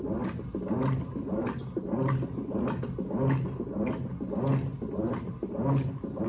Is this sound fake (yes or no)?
no